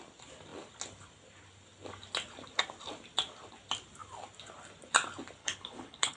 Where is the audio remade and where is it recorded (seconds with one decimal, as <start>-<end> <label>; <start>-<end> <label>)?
0.0-5.4 recorded; 5.4-6.2 remade